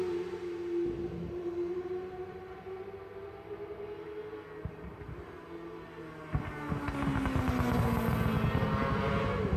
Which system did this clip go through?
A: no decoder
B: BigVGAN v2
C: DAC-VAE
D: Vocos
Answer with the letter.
A